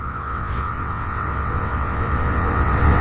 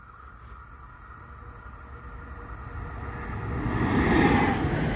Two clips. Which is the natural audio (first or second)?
second